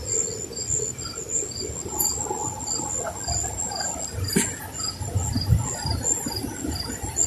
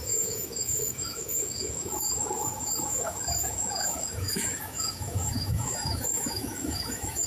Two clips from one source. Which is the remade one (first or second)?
second